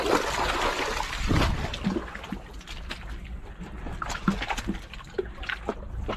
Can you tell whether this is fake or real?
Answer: real